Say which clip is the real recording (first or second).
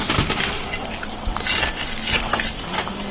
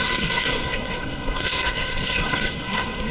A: first